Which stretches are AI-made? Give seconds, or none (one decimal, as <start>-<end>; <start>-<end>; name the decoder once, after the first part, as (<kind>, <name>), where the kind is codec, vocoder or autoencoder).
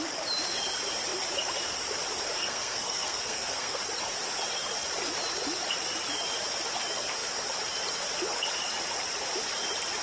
2.4-3.8 (codec, SNAC)